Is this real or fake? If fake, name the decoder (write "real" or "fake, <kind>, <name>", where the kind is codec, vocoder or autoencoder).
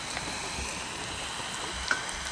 real